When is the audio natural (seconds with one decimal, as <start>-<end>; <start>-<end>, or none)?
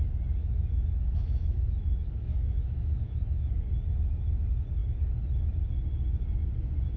0.0-0.4; 3.6-7.0